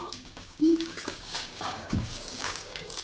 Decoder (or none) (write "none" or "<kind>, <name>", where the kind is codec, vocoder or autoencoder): codec, DAC